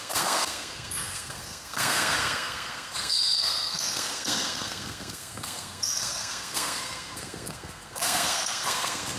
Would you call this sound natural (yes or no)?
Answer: no